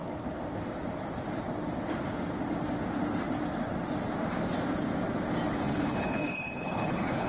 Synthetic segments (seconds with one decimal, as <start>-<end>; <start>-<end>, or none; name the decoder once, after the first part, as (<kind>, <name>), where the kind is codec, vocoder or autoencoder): 5.7-7.3 (codec, HILCodec)